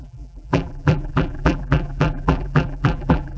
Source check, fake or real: fake